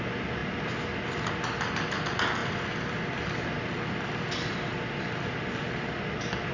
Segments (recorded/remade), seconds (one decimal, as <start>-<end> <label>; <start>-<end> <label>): 0.0-6.5 recorded